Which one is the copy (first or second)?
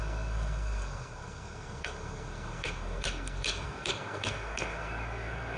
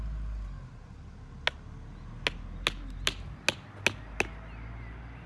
first